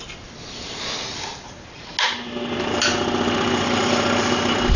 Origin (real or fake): real